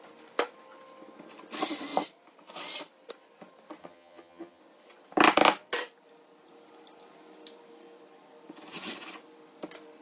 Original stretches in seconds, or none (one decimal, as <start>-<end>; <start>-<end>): 0.0-3.8; 4.6-10.0